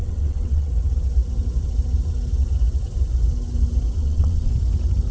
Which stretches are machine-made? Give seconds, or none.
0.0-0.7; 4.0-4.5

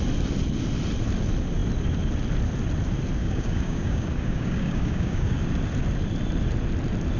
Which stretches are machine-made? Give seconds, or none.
3.2-5.4

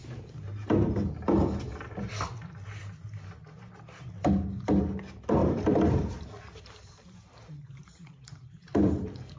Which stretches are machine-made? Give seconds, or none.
5.4-9.4

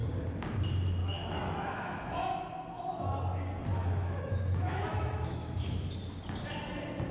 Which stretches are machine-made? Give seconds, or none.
1.0-2.4; 3.8-5.8